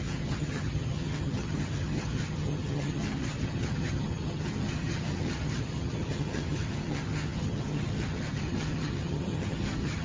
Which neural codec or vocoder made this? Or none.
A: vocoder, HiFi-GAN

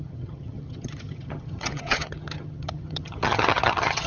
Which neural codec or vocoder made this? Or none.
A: vocoder, HiFi-GAN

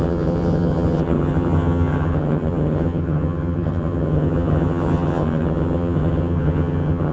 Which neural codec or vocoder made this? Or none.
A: vocoder, HiFi-GAN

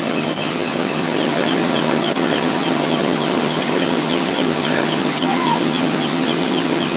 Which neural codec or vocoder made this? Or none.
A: vocoder, HiFi-GAN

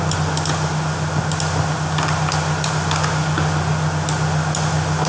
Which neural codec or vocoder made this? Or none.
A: none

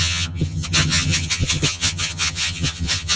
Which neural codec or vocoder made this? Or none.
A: vocoder, HiFi-GAN